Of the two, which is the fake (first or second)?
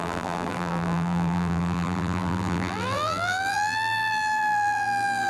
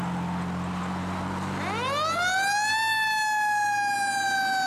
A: first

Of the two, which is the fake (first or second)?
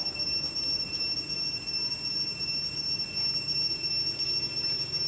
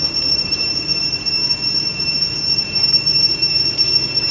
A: second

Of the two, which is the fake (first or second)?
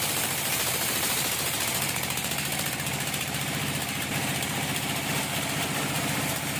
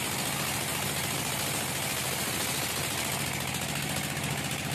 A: first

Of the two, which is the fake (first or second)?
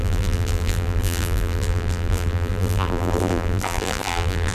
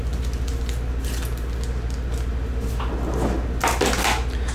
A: first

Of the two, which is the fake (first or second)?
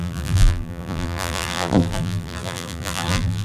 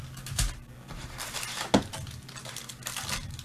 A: first